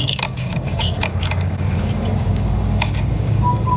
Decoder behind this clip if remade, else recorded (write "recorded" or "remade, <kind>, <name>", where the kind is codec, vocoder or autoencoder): remade, codec, DAC